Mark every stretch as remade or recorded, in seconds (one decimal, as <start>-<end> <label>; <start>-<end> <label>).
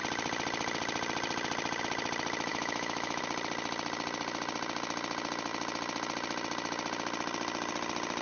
0.0-2.5 recorded; 2.5-3.2 remade; 3.2-8.2 recorded